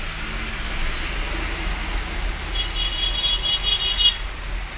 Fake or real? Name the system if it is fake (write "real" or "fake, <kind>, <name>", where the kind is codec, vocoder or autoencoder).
real